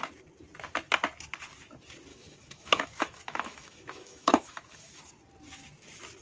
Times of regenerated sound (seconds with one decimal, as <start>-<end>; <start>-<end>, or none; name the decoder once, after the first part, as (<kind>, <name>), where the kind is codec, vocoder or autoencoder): 2.1-5.0 (autoencoder, DAC-VAE)